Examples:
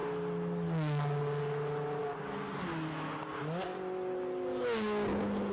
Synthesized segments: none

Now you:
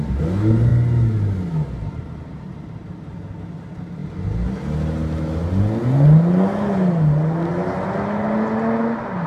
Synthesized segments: none

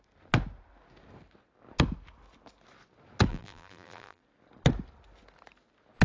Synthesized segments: 3.3-4.2

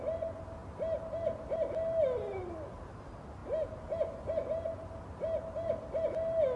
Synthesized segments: none

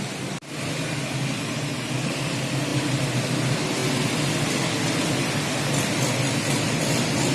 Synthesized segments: none

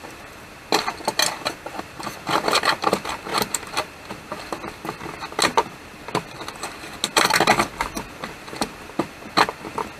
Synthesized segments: none

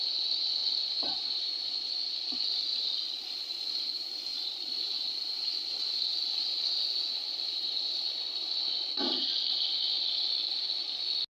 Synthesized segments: 0.6-1.6